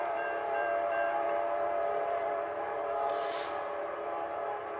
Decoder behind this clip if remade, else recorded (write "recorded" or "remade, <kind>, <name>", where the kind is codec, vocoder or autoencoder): remade, vocoder, BigVGAN v2